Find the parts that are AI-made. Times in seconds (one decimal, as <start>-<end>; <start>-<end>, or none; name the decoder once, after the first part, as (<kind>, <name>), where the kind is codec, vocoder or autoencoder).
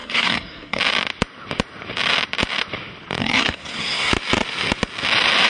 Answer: 0.0-0.8 (codec, SNAC); 3.2-4.1